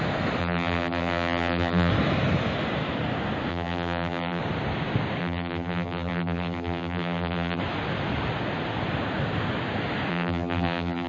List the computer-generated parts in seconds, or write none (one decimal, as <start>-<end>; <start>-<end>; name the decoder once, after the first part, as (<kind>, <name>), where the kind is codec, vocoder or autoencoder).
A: 0.4-1.9 (vocoder, BigVGAN v2); 3.5-4.4; 5.2-7.6; 10.1-11.1